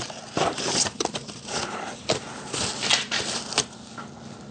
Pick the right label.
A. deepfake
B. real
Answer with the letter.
B